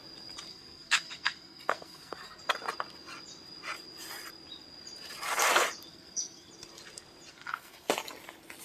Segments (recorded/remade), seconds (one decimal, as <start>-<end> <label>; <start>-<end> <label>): 0.0-0.5 recorded; 0.5-2.4 remade; 2.4-5.9 recorded; 5.9-6.5 remade; 6.5-7.3 recorded; 7.3-7.9 remade; 7.9-8.6 recorded